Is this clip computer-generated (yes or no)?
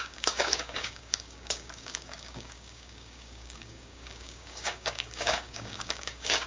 yes